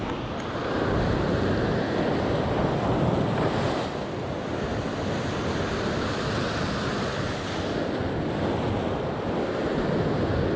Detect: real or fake real